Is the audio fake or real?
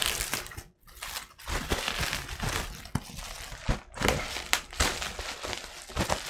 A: real